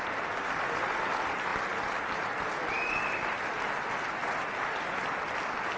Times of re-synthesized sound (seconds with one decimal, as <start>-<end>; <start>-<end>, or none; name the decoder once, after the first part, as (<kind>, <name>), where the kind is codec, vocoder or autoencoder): none